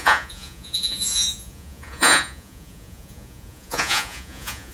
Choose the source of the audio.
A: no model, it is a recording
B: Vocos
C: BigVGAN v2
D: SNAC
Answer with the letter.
B